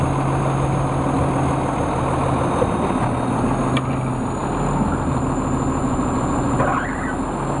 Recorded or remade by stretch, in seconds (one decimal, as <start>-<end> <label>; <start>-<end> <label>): 0.0-5.8 recorded; 5.8-6.6 remade; 6.6-7.6 recorded